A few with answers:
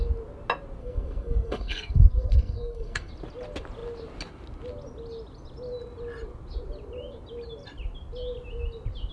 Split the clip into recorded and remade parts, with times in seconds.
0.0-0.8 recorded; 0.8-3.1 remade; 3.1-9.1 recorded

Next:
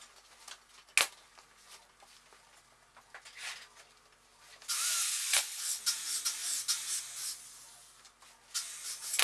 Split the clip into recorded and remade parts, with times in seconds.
0.0-5.0 recorded; 5.0-5.8 remade; 5.8-9.2 recorded

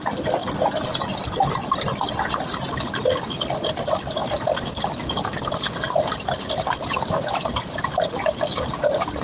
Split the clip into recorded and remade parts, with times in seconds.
0.0-4.2 recorded; 4.2-4.9 remade; 4.9-9.2 recorded